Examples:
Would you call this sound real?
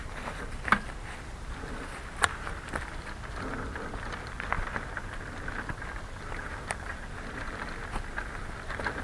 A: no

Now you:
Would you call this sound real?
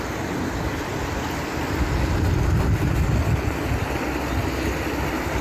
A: yes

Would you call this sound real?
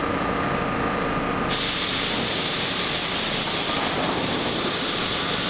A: yes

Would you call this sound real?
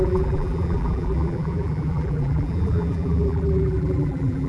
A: no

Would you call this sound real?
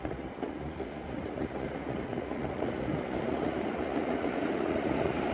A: no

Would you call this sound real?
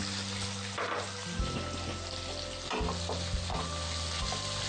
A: yes